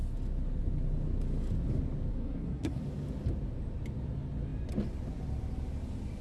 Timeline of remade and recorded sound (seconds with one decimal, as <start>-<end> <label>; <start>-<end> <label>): 0.0-2.1 recorded; 2.1-2.8 remade; 2.8-6.2 recorded